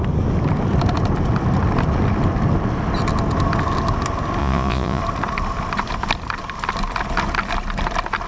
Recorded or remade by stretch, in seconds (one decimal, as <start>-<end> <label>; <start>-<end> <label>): 0.0-4.4 recorded; 4.4-5.0 remade; 5.0-8.3 recorded